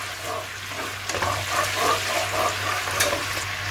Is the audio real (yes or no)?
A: yes